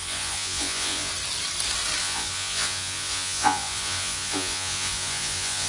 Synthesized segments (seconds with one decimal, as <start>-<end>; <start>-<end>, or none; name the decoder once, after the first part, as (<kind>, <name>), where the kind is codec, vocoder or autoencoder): 0.0-1.1 (vocoder, Vocos); 2.0-5.7